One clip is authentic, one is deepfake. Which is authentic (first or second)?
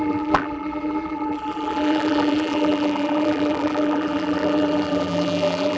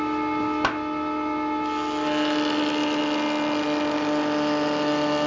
second